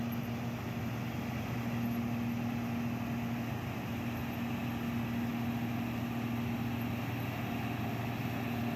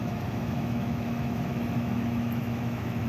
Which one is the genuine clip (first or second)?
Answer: first